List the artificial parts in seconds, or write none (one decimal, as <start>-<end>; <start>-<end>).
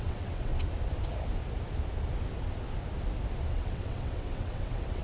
0.0-0.5; 3.5-5.0